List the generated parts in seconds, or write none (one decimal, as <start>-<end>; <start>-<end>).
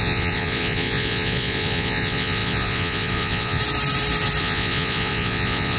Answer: 0.0-3.6; 4.4-5.8